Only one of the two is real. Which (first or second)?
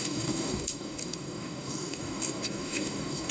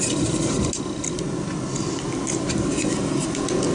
second